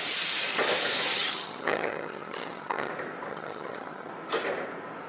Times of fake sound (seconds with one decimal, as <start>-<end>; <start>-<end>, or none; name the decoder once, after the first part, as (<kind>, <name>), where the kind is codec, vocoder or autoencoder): 1.1-2.9 (vocoder, HiFi-GAN); 3.3-4.1